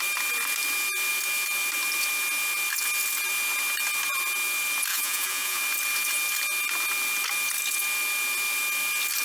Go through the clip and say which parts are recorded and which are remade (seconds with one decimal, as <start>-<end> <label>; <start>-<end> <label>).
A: 0.0-4.9 recorded; 4.9-5.6 remade; 5.6-9.2 recorded